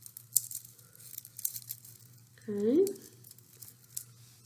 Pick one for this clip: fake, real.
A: real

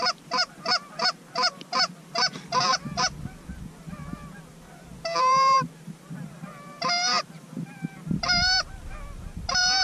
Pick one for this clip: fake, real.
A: fake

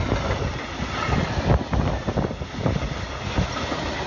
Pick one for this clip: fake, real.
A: real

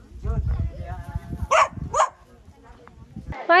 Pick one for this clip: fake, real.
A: real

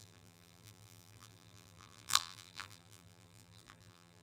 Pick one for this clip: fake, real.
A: fake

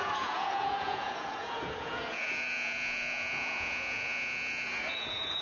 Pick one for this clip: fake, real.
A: fake